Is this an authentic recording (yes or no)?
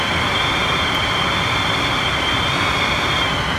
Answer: yes